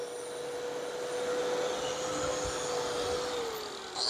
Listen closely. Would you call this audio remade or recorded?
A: recorded